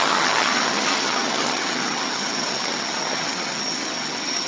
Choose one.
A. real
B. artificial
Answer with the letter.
B